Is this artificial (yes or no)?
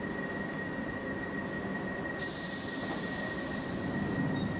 no